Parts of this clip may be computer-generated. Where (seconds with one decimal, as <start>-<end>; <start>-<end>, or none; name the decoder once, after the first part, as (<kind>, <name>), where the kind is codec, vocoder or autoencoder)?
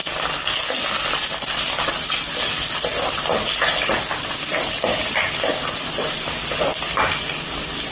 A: none